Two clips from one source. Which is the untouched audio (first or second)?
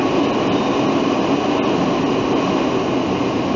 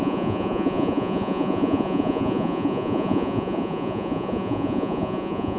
first